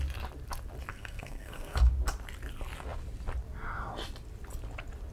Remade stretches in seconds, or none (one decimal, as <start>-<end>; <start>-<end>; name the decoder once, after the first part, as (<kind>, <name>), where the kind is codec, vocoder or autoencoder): 0.9-1.9 (codec, SNAC)